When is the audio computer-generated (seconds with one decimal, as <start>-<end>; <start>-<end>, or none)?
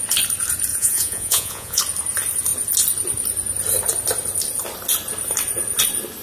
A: 0.7-1.8